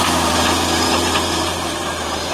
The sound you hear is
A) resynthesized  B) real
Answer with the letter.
A